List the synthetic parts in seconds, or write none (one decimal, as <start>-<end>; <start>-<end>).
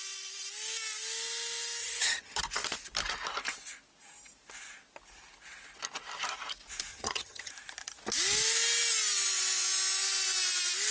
1.8-2.4; 6.9-7.5